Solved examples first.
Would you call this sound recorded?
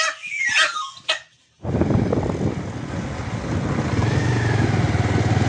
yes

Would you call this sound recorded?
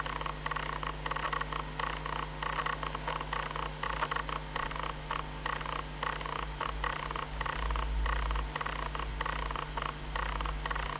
yes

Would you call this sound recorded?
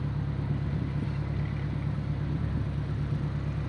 yes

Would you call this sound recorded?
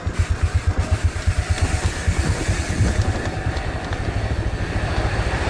yes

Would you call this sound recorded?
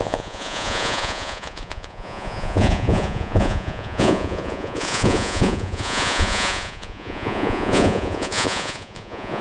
no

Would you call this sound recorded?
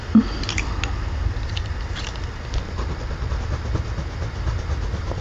yes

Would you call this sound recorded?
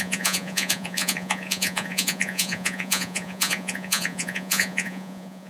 no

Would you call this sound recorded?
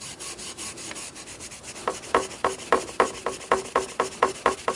yes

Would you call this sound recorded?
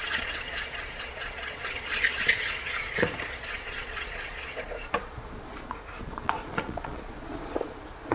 no